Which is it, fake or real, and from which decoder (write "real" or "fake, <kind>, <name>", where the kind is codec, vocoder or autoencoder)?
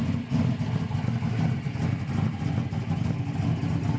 real